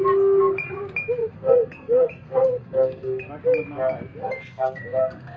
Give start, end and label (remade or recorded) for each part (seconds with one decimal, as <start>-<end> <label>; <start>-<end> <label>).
0.0-1.2 recorded; 1.2-3.3 remade; 3.3-4.2 recorded; 4.2-5.4 remade